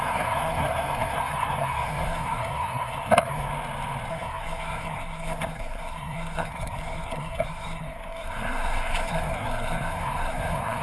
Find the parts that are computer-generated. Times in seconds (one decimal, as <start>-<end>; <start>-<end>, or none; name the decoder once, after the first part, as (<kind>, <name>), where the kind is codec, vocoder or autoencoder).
0.0-3.5 (codec, SNAC); 4.1-10.8